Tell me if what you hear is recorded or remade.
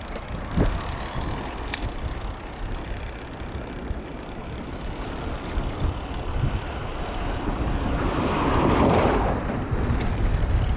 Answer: remade